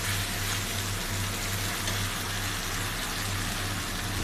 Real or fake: real